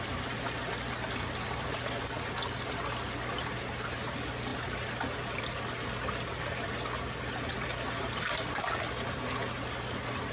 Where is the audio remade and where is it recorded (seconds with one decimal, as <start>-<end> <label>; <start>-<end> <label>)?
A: 0.0-10.3 recorded